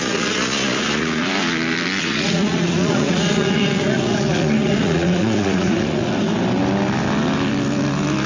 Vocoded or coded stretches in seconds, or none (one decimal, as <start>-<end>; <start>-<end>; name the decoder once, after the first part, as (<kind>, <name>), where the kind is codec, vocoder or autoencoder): 0.0-1.2 (vocoder, Vocos); 2.0-6.1